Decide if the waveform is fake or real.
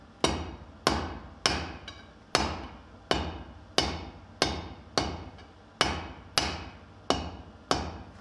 real